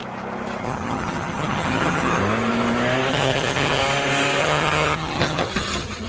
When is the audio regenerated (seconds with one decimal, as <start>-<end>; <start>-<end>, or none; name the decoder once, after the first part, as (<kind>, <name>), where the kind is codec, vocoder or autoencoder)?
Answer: 0.6-2.2 (vocoder, HiFi-GAN); 3.1-3.8; 4.4-6.1